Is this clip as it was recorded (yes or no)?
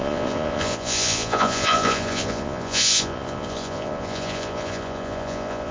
no